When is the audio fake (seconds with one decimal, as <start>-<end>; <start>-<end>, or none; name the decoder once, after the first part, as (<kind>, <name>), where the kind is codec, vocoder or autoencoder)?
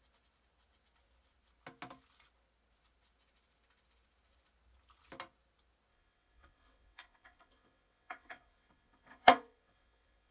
5.9-10.3 (vocoder, WaveNeXt)